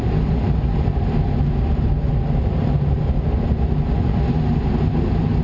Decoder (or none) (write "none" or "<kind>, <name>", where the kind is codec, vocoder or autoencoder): none